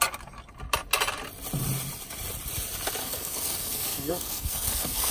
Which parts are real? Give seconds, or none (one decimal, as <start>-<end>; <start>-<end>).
0.0-3.0